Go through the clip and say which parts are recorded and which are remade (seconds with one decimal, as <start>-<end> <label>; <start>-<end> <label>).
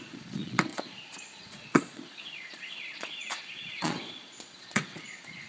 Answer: 0.0-5.5 remade